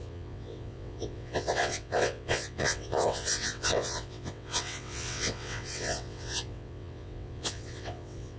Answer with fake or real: fake